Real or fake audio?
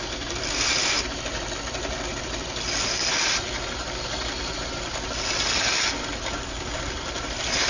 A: real